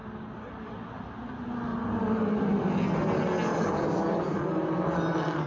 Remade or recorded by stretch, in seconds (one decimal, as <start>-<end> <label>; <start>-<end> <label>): 0.0-1.7 recorded; 1.7-2.5 remade; 2.5-3.5 recorded; 3.5-4.4 remade; 4.4-5.5 recorded